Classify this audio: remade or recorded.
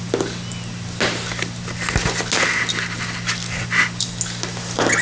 recorded